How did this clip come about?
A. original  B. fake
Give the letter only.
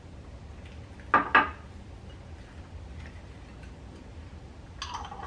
A